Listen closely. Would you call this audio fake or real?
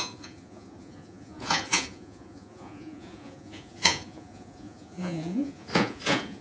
fake